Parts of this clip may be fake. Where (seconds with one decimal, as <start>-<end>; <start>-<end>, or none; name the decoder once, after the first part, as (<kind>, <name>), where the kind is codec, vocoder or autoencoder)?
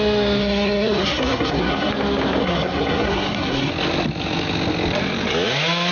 0.4-1.9 (codec, SNAC); 2.4-3.7